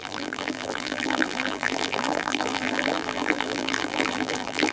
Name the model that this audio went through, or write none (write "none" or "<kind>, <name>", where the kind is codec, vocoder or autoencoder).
vocoder, BigVGAN v2